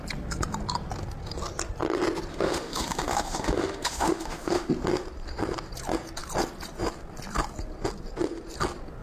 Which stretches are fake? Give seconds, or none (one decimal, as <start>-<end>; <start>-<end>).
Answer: 2.3-4.7